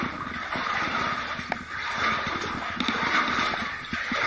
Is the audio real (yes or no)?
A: yes